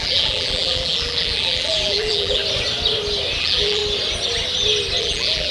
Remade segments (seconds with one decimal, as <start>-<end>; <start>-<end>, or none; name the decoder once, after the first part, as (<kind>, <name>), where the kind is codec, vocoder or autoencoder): 0.0-2.4 (vocoder, BigVGAN v2); 3.4-3.8; 5.0-5.5